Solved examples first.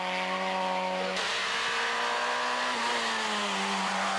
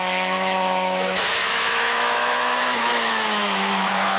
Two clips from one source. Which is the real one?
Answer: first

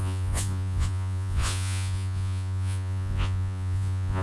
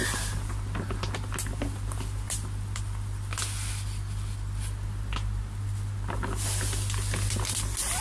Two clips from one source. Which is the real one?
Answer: second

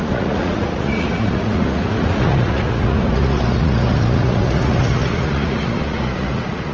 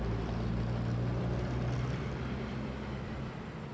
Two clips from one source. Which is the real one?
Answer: second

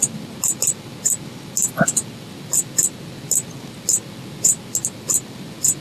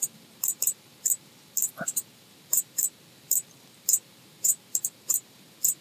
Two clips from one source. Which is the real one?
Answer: first